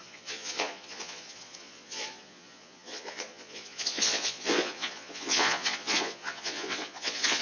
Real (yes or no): no